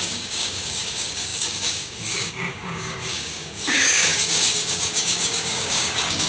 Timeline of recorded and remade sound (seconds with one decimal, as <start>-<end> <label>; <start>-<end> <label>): 0.0-6.3 remade